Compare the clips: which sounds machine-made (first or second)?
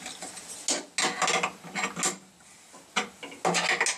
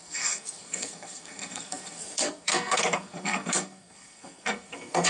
second